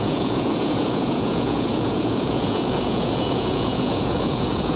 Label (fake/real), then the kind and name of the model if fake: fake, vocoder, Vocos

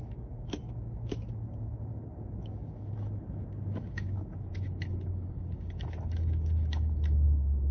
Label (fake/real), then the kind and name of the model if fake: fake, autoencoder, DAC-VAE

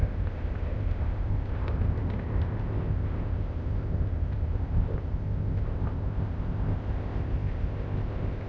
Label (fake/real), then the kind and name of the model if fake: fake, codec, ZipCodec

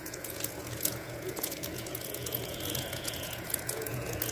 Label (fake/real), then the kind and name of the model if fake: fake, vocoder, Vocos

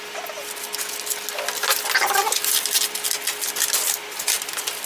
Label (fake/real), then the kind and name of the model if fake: real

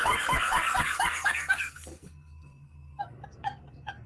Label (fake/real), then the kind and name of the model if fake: fake, codec, SNAC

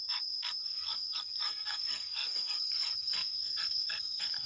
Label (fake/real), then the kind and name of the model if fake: fake, codec, SNAC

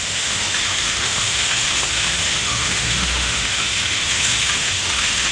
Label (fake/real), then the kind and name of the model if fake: fake, autoencoder, DAC-VAE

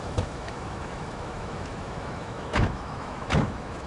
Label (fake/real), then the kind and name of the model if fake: fake, autoencoder, DAC-VAE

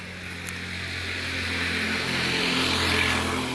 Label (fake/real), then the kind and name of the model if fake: real